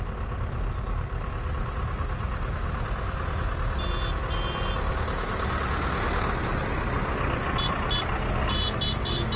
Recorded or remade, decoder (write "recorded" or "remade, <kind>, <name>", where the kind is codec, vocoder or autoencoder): recorded